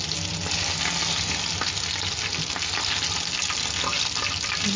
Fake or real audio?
real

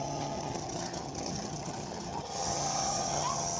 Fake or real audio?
fake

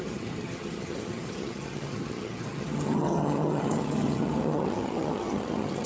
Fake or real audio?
fake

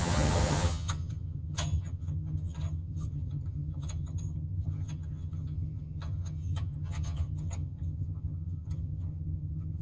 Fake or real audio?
fake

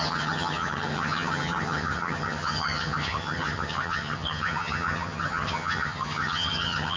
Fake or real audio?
fake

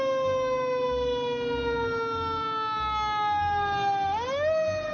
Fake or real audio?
real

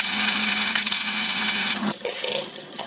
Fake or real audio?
fake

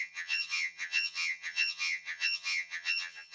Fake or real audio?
fake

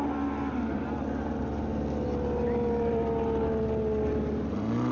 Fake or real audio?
real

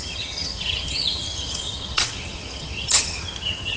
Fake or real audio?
fake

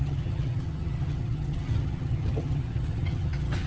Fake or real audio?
fake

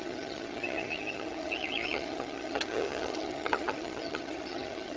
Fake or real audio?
fake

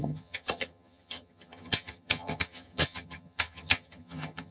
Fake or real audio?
fake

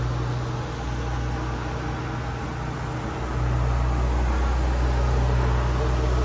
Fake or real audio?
real